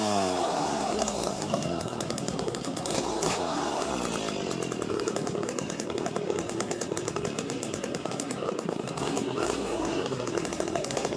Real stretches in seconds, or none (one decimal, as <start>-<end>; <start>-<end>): 3.9-4.9